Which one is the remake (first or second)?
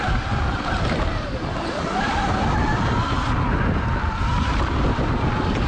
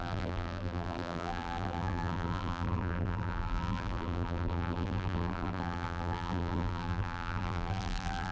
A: second